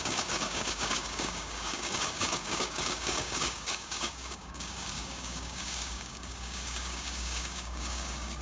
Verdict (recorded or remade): remade